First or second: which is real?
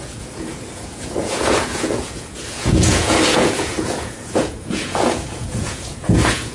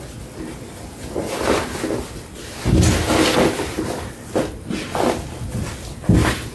second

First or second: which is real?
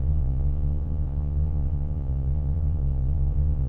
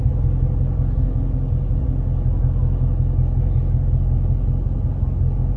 second